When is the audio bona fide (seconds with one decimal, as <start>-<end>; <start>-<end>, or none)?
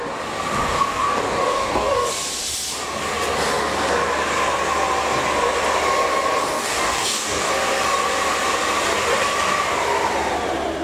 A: 0.0-0.8; 2.1-6.5; 7.5-10.8